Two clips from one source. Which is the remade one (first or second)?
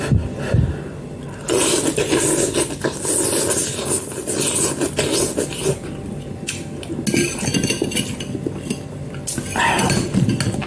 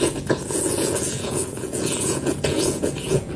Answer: second